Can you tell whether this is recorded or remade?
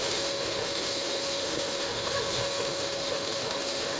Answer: remade